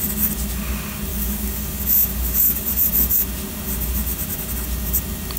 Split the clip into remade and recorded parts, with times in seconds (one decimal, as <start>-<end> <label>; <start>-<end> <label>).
0.0-1.1 recorded; 1.1-2.8 remade; 2.8-5.4 recorded